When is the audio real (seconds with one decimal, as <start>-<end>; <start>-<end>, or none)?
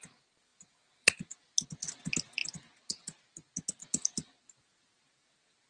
0.0-0.5; 1.3-5.7